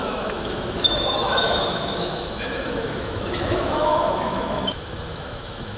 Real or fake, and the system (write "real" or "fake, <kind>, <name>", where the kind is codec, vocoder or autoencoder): fake, autoencoder, DAC-VAE